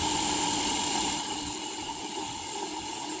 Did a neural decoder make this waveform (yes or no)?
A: no